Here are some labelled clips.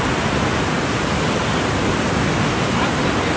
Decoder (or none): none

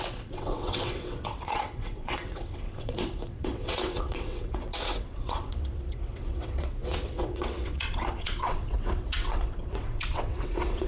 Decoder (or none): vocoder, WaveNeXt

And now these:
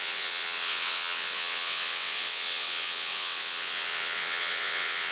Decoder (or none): vocoder, WaveNeXt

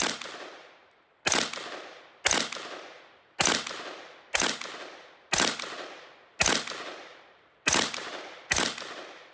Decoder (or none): none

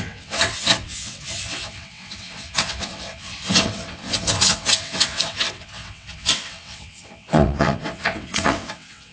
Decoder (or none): vocoder, WaveNeXt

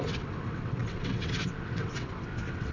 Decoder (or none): vocoder, WaveNeXt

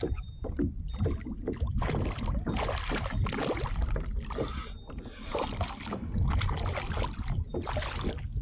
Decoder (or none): none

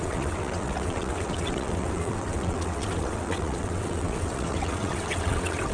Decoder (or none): vocoder, WaveNeXt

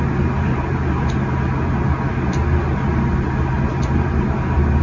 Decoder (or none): none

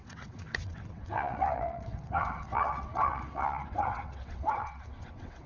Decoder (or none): vocoder, WaveNeXt